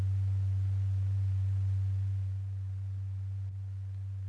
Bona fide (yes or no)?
yes